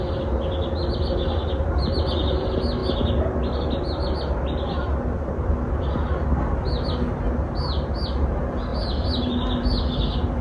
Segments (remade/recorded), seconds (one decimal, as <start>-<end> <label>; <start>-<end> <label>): 0.0-8.7 recorded; 8.7-9.8 remade; 9.8-10.4 recorded